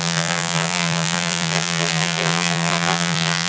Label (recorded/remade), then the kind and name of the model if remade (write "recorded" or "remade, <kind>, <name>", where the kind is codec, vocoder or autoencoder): remade, vocoder, BigVGAN v2